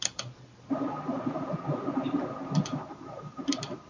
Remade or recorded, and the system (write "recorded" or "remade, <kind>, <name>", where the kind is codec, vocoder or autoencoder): remade, vocoder, BigVGAN v2